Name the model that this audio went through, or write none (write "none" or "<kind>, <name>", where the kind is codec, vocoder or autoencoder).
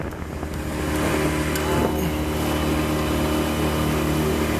none